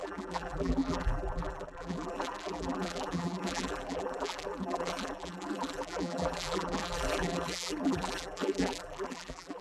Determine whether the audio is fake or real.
fake